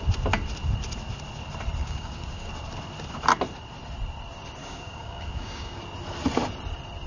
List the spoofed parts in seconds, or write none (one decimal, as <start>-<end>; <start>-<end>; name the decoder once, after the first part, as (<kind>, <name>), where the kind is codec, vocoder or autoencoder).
1.8-2.5 (codec, DAC); 4.6-5.8